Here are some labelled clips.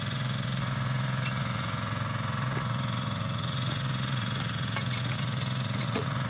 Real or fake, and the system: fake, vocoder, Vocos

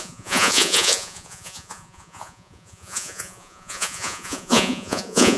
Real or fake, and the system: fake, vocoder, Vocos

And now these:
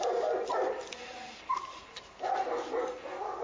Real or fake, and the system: real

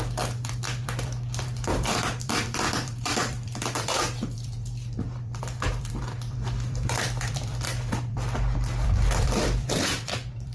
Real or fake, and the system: fake, vocoder, BigVGAN v2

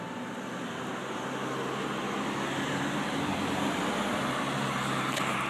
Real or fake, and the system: real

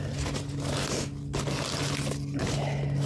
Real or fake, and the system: real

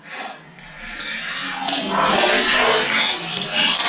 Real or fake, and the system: real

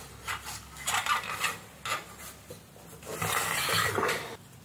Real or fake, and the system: real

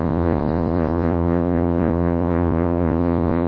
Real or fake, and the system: fake, vocoder, Vocos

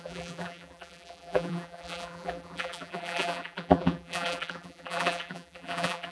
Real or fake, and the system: fake, vocoder, BigVGAN v2